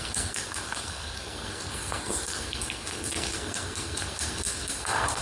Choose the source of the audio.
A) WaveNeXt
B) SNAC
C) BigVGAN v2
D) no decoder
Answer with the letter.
B